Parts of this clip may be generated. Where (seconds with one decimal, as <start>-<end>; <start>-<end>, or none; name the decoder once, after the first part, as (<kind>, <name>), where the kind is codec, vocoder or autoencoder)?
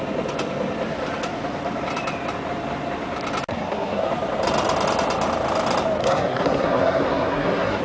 3.5-4.1 (codec, SNAC); 6.0-7.8